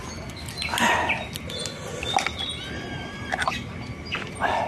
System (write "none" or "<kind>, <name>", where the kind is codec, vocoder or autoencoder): none